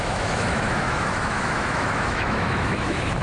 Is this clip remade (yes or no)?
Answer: yes